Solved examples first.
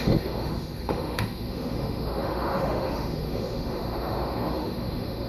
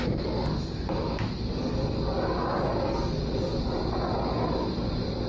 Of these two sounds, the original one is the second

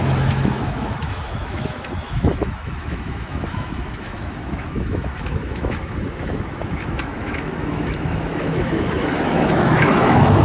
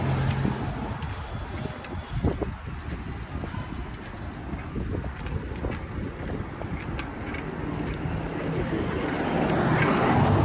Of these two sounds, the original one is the second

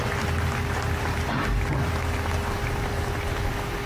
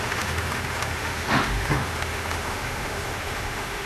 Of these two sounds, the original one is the first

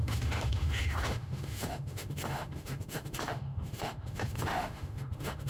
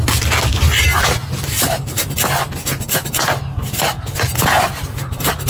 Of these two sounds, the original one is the second